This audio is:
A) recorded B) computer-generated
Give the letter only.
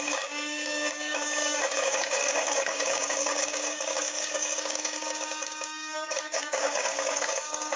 B